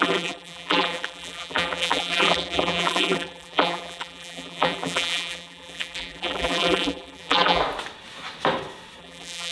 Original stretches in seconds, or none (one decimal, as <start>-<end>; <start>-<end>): 7.6-9.0